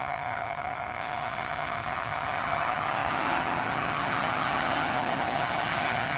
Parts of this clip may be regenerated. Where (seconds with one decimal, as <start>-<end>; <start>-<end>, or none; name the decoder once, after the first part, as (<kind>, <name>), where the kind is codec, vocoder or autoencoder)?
0.0-6.2 (vocoder, HiFi-GAN)